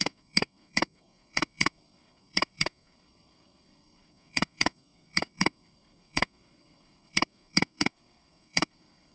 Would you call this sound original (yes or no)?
no